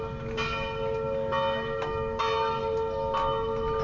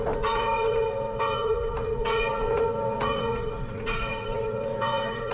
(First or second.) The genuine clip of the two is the first